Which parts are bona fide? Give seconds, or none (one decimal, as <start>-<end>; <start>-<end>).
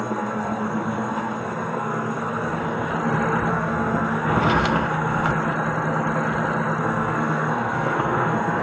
2.9-3.5; 5.3-6.8